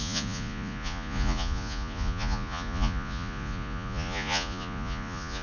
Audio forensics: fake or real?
fake